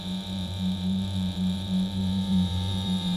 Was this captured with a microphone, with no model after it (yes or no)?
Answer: no